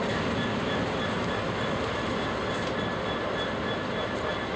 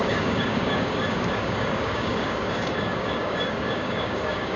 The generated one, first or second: second